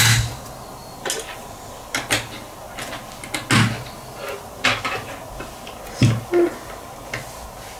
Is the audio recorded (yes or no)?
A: yes